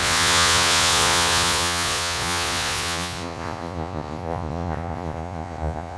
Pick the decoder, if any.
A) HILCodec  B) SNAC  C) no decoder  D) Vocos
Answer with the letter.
D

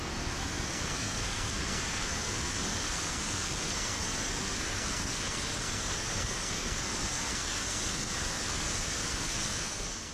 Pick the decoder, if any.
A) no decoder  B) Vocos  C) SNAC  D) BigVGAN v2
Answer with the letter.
C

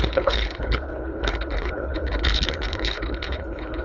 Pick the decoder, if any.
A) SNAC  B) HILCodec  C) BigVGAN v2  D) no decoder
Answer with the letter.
B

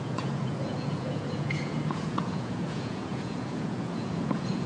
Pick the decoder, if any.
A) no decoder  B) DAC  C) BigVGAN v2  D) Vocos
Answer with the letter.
D